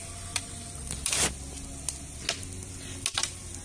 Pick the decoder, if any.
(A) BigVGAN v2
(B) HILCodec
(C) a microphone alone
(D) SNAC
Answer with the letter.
C